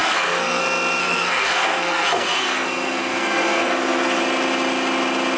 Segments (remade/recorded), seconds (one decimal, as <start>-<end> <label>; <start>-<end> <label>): 0.0-0.6 remade; 0.6-1.0 recorded; 1.0-4.2 remade; 4.2-5.4 recorded